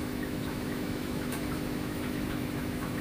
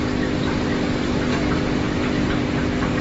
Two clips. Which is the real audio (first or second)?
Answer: second